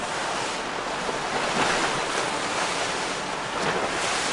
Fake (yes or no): no